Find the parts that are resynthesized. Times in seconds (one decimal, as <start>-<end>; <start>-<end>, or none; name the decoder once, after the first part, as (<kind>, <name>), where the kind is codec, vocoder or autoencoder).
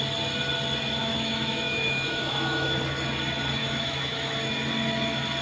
1.0-2.7 (autoencoder, DAC-VAE); 3.6-4.5